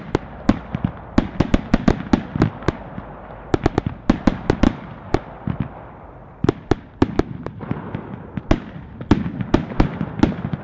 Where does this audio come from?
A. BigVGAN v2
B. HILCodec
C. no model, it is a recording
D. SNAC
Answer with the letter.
C